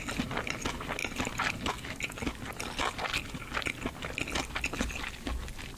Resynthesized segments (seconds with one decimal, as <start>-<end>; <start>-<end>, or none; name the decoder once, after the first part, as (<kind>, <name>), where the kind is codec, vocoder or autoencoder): none